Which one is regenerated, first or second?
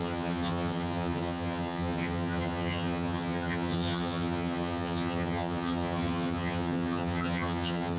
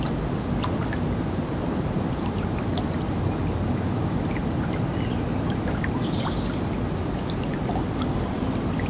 first